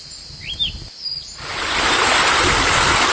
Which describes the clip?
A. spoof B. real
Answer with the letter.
B